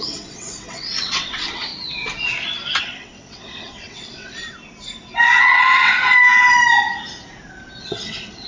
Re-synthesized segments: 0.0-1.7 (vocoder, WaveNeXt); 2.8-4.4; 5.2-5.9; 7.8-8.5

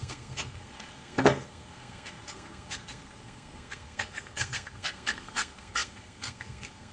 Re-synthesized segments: 0.0-6.9 (codec, SNAC)

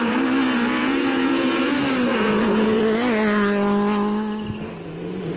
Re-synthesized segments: 0.8-1.7 (vocoder, Vocos); 2.1-2.8

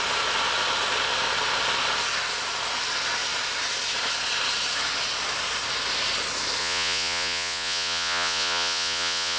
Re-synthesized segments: 6.6-9.4 (vocoder, Vocos)

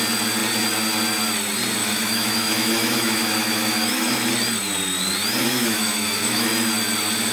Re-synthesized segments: 1.8-4.3 (autoencoder, DAC-VAE); 5.4-6.5

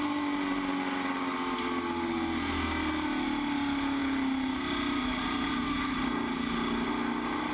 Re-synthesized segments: none

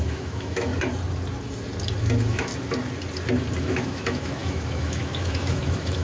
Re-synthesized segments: 0.0-0.7 (autoencoder, DAC-VAE); 2.0-2.5; 3.6-6.0

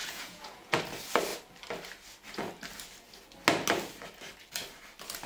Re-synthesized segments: 0.0-0.8 (vocoder, Vocos)